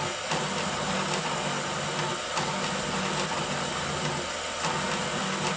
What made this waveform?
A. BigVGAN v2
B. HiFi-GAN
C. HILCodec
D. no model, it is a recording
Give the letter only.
D